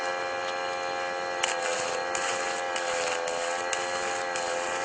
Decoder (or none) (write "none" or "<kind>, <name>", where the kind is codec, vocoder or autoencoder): none